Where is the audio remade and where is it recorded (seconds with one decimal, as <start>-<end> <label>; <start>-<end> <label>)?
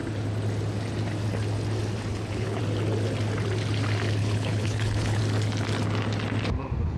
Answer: 0.0-2.1 recorded; 2.1-2.6 remade; 2.6-4.2 recorded; 4.2-5.2 remade; 5.2-7.0 recorded